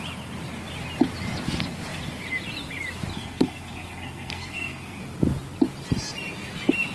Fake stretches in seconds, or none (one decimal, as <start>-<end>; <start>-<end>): 3.1-5.0